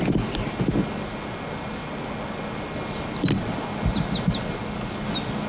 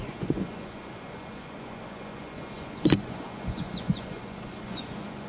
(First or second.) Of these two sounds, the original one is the first